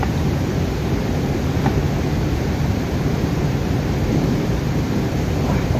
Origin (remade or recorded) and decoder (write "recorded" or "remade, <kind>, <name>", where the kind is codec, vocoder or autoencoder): remade, vocoder, BigVGAN v2